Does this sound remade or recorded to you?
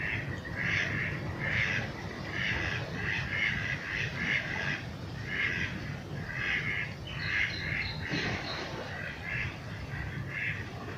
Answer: recorded